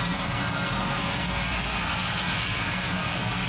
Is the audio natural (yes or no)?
no